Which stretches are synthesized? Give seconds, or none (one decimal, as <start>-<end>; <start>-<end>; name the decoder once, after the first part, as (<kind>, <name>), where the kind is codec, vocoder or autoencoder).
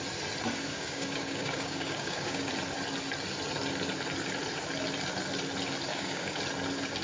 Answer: 0.7-2.5 (codec, DAC); 5.9-6.4